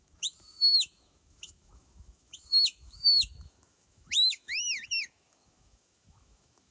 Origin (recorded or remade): remade